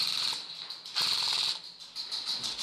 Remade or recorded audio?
recorded